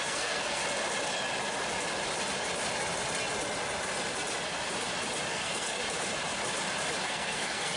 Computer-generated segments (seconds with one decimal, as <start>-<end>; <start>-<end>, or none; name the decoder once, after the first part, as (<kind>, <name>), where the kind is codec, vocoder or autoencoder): 0.0-0.6 (codec, SNAC); 5.3-5.8; 7.0-7.8